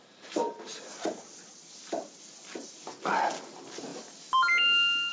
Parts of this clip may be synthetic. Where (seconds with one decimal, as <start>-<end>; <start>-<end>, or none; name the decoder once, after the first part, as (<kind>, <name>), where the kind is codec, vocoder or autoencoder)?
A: none